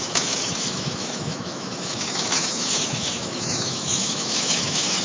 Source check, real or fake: fake